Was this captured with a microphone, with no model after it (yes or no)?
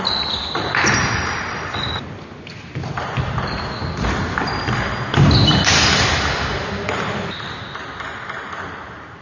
yes